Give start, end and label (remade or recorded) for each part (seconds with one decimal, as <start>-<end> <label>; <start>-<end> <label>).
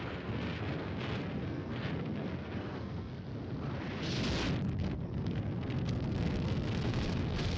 0.0-3.3 remade; 3.3-4.7 recorded; 4.7-7.6 remade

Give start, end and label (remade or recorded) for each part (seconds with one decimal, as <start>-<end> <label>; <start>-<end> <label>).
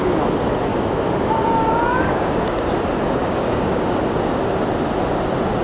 0.0-0.7 recorded; 0.7-2.7 remade; 2.7-3.2 recorded; 3.2-4.0 remade; 4.0-5.6 recorded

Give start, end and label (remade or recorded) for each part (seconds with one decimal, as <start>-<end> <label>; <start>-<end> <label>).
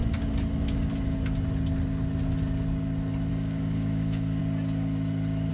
0.0-3.3 recorded; 3.3-4.4 remade; 4.4-5.5 recorded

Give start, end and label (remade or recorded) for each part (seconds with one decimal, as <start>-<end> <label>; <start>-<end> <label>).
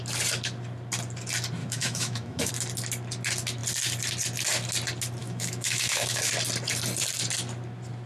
0.0-1.6 recorded; 1.6-2.5 remade; 2.5-5.2 recorded; 5.2-6.3 remade; 6.3-8.1 recorded